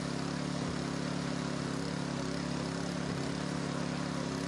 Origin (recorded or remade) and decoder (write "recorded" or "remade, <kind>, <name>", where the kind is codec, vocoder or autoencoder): recorded